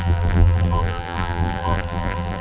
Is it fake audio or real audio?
fake